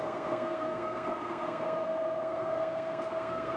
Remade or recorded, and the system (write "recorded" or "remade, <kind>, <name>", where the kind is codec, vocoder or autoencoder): remade, codec, SNAC